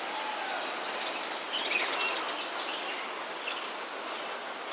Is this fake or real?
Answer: real